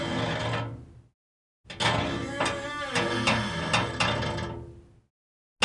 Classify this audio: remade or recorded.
recorded